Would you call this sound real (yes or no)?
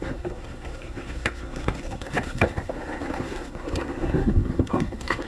no